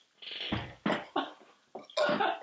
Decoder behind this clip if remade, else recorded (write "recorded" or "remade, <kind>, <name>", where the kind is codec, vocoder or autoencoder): recorded